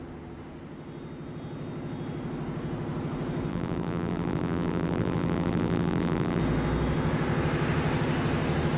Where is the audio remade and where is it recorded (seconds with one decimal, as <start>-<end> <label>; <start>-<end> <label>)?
0.0-3.5 recorded; 3.5-6.4 remade; 6.4-8.8 recorded